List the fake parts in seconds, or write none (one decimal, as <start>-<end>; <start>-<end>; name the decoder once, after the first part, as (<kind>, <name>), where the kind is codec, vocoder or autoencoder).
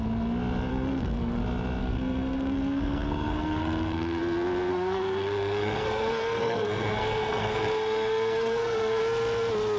0.7-1.4 (codec, SNAC); 1.8-4.2; 4.7-9.0